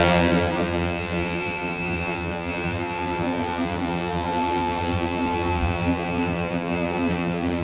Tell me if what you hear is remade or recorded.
remade